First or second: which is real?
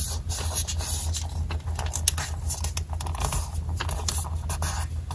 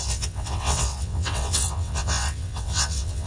first